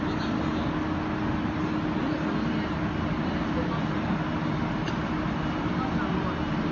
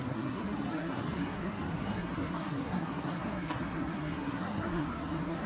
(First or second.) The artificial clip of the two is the second